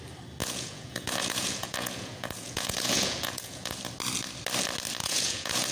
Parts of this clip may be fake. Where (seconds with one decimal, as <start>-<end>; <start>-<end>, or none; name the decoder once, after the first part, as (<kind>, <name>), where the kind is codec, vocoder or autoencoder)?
0.4-3.8 (vocoder, Vocos); 5.0-5.7